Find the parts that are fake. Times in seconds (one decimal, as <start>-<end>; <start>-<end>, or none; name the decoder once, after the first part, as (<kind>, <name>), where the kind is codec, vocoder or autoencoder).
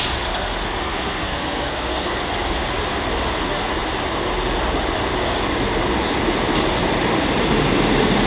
0.8-2.2 (codec, SNAC)